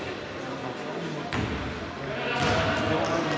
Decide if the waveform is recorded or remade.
recorded